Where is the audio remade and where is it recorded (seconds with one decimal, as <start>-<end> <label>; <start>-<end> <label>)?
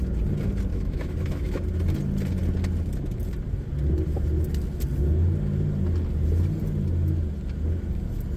0.0-0.7 recorded; 0.7-1.6 remade; 1.6-8.4 recorded